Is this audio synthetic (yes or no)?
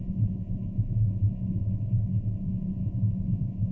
yes